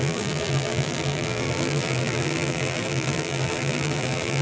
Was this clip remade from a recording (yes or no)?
yes